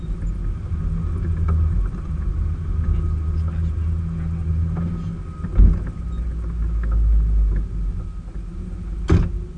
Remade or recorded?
recorded